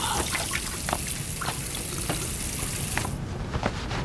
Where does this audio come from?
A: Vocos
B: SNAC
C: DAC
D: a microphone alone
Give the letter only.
D